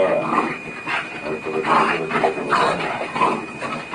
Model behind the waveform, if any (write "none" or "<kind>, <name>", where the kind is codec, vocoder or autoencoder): none